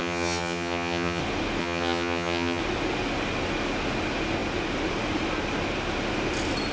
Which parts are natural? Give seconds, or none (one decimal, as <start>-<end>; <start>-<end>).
1.2-1.6; 2.6-6.7